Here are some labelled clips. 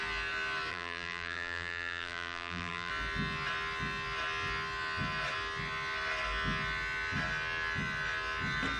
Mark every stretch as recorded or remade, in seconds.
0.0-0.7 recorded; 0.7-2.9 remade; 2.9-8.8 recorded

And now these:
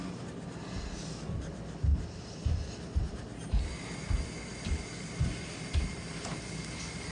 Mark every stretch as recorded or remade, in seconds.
0.0-1.9 recorded; 1.9-2.7 remade; 2.7-7.1 recorded

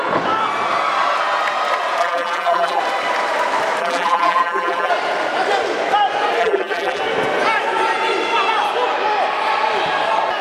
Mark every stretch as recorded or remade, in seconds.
0.0-2.0 recorded; 2.0-2.8 remade; 2.8-3.8 recorded; 3.8-4.9 remade; 4.9-6.4 recorded; 6.4-7.0 remade; 7.0-10.4 recorded

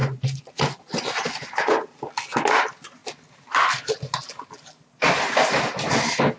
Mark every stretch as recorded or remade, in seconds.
0.0-0.8 remade; 0.8-6.4 recorded